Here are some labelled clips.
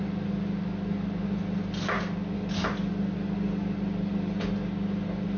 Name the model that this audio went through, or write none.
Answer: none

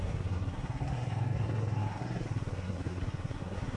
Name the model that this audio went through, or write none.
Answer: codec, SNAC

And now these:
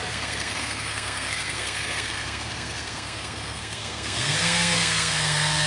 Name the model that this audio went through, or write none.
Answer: codec, SNAC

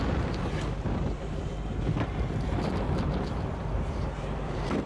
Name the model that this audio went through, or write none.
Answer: vocoder, BigVGAN v2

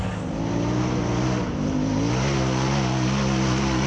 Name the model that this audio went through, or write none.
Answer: none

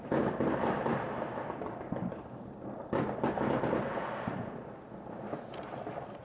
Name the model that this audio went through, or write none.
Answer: none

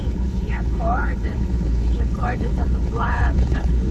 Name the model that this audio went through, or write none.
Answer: codec, HILCodec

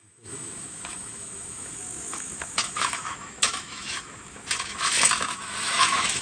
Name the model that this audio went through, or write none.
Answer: autoencoder, DAC-VAE